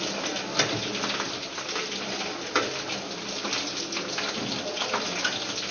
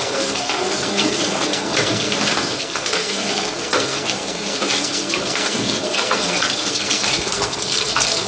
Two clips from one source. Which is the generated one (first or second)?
second